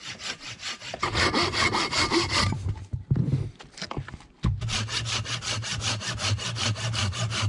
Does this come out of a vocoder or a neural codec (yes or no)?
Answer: no